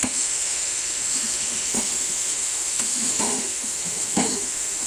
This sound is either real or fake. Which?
fake